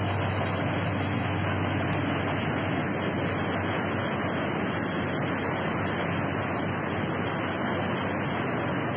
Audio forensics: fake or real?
real